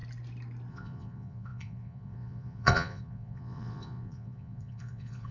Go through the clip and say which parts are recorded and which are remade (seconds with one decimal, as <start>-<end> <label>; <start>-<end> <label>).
0.0-0.7 recorded; 0.7-5.3 remade